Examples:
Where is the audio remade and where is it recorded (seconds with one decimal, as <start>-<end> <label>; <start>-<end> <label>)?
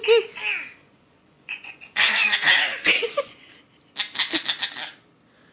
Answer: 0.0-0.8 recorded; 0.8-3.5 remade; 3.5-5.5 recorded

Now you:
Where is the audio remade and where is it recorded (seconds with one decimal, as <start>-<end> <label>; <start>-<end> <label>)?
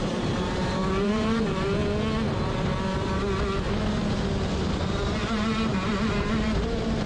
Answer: 0.0-1.8 remade; 1.8-4.7 recorded; 4.7-7.1 remade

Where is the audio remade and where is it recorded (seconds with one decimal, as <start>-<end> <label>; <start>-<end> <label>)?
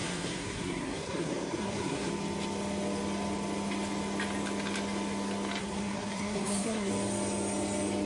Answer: 0.0-2.1 remade; 2.1-5.6 recorded; 5.6-6.9 remade; 6.9-8.1 recorded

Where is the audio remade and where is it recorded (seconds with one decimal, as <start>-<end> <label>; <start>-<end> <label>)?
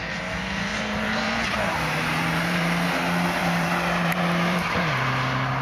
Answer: 0.0-0.7 recorded; 0.7-2.9 remade; 2.9-3.4 recorded; 3.4-4.8 remade; 4.8-5.6 recorded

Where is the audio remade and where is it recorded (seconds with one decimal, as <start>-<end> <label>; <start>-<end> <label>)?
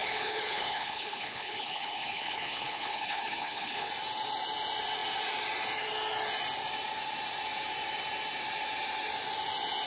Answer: 0.0-3.9 remade; 3.9-9.9 recorded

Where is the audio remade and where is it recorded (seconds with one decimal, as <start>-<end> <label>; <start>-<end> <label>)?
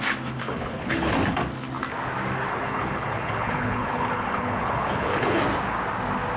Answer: 0.0-0.4 recorded; 0.4-1.1 remade; 1.1-2.5 recorded; 2.5-5.4 remade; 5.4-6.4 recorded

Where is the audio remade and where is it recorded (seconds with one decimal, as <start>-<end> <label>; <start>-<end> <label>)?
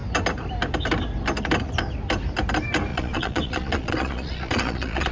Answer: 0.0-2.9 recorded; 2.9-5.1 remade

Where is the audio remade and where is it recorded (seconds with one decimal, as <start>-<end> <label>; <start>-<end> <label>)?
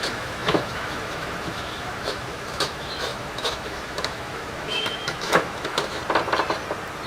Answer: 0.0-6.0 remade; 6.0-7.1 recorded